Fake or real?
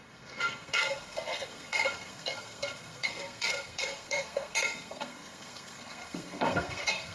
fake